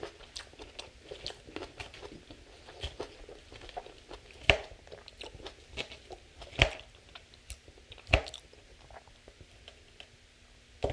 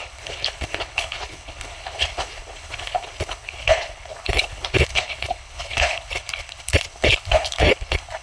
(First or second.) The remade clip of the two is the second